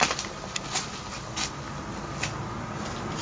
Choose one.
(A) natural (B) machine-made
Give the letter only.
A